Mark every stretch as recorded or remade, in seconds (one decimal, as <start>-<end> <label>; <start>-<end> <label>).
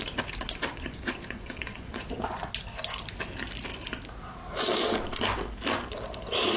0.0-0.7 recorded; 0.7-2.4 remade; 2.4-6.6 recorded